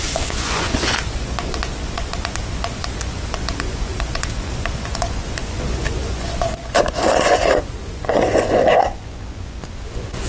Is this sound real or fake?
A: fake